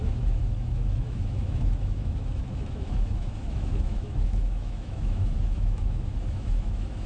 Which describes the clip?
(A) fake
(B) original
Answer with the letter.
A